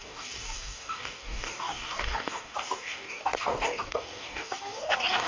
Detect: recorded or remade remade